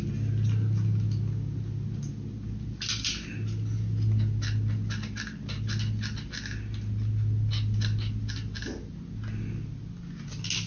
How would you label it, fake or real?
real